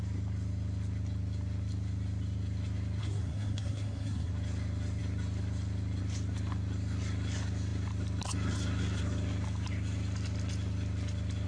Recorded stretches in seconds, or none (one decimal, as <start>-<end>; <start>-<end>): 0.0-3.0; 4.3-11.5